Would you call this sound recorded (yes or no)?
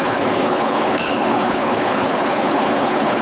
no